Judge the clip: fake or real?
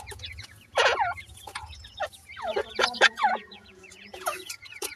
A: fake